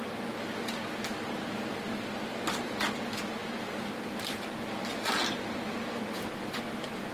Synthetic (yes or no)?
no